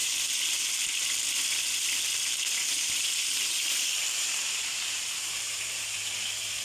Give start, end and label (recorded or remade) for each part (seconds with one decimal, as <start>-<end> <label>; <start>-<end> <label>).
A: 0.0-0.7 remade; 0.7-2.6 recorded; 2.6-6.0 remade; 6.0-6.6 recorded